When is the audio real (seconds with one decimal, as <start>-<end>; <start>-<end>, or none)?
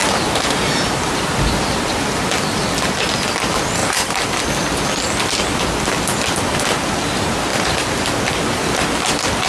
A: 1.2-3.8; 4.4-9.5